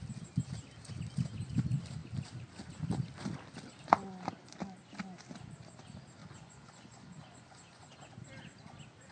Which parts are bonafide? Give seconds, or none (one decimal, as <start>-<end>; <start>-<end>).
0.0-6.2; 7.9-9.1